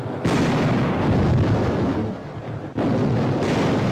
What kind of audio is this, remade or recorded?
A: recorded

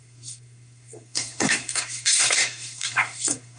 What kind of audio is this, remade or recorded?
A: remade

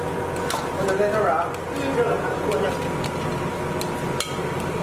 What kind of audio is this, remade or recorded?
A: recorded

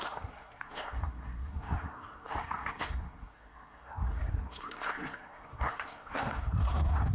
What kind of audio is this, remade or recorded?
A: remade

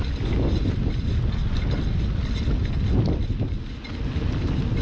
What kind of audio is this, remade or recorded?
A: recorded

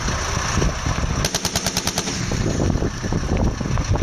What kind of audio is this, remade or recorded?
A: recorded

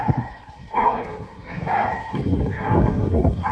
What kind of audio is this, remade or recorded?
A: remade